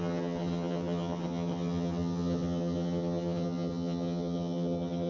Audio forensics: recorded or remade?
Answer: remade